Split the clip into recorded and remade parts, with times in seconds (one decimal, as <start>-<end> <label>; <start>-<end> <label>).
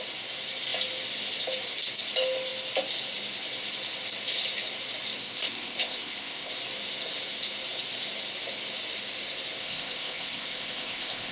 0.0-5.2 recorded; 5.2-6.5 remade; 6.5-9.6 recorded; 9.6-11.3 remade